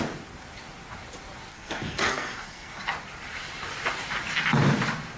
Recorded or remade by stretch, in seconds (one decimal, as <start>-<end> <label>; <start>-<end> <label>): 0.0-1.5 recorded; 1.5-2.8 remade; 2.8-5.2 recorded